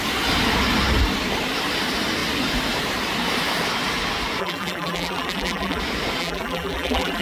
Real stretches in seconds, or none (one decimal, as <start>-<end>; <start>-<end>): 0.0-4.4; 5.8-6.2